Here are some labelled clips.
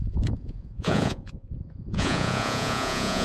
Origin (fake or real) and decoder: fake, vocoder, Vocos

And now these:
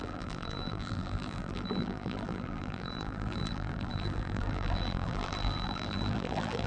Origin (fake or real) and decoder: fake, vocoder, BigVGAN v2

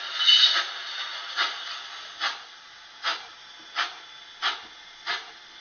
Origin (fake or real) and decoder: real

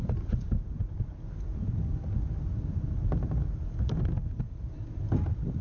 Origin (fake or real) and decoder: real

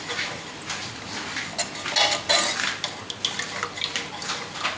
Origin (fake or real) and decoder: real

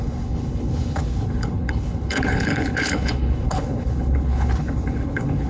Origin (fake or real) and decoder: fake, codec, HILCodec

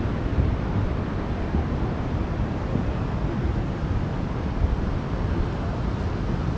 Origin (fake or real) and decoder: real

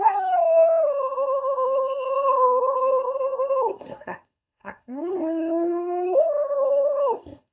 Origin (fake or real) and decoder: fake, codec, SNAC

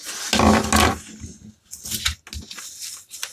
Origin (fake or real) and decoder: real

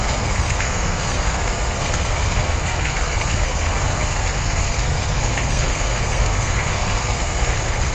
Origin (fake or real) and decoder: fake, codec, SNAC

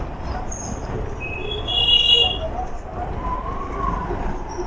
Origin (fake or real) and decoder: real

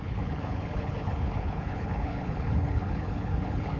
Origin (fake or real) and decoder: fake, codec, HILCodec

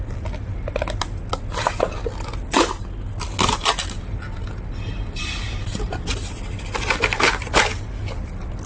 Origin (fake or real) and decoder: real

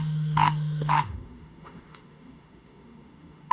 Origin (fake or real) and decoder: fake, autoencoder, DAC-VAE